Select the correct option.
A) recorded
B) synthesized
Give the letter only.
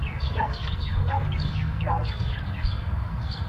B